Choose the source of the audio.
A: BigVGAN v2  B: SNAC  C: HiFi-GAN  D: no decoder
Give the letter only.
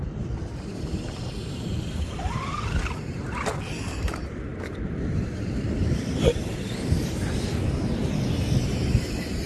A